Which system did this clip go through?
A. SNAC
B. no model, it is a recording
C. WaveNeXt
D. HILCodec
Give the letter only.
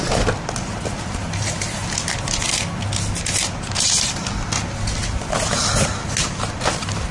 B